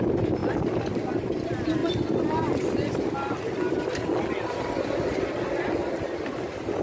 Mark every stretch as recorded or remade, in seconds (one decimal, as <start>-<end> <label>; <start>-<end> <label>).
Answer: 0.0-6.8 recorded